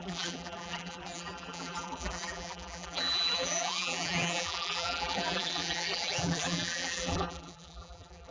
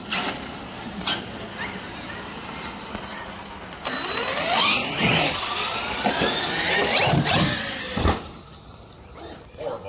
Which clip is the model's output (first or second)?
first